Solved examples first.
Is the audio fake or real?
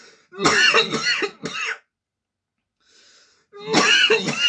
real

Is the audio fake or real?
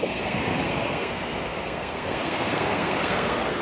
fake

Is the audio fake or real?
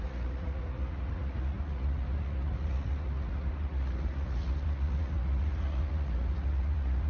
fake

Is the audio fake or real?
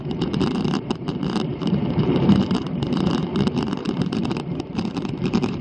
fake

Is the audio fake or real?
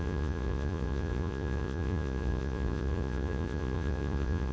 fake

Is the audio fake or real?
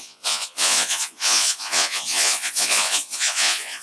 fake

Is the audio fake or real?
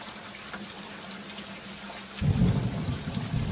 real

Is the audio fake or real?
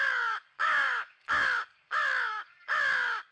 fake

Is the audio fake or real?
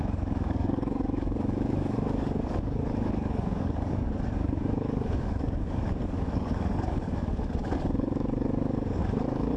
fake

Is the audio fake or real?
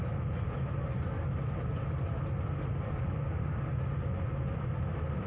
real